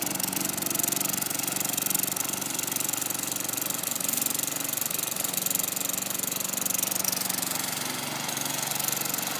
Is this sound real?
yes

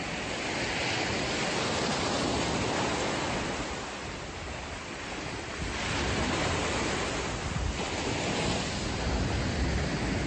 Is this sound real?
yes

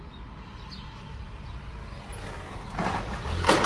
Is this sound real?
yes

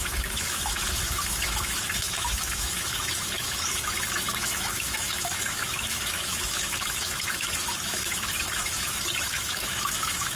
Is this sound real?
no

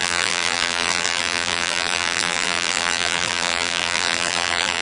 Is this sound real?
no